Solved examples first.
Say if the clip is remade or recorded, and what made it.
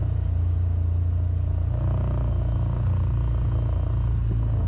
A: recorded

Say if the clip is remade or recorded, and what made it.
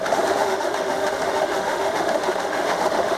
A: remade, autoencoder, DAC-VAE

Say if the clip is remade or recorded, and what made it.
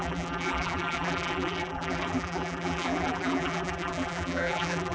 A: remade, vocoder, BigVGAN v2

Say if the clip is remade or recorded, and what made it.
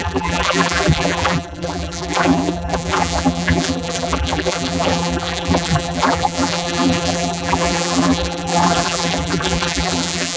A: remade, vocoder, BigVGAN v2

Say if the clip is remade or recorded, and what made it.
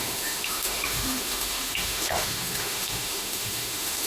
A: remade, autoencoder, DAC-VAE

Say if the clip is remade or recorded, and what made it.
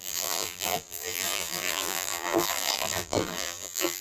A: remade, vocoder, BigVGAN v2